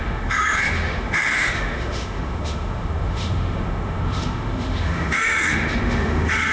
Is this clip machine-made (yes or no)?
yes